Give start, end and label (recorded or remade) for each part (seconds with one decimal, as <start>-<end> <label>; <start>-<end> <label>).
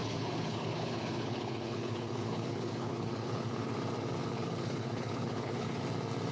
0.0-3.7 remade; 3.7-4.2 recorded; 4.2-5.8 remade; 5.8-6.3 recorded